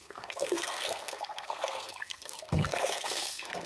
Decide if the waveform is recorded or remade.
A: remade